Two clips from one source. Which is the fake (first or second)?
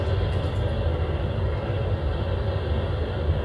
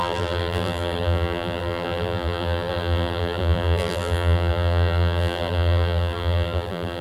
second